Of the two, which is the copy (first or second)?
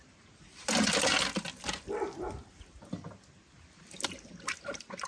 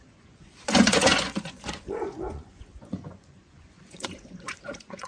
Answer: second